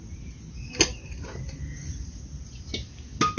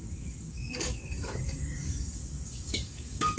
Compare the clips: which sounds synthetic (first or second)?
second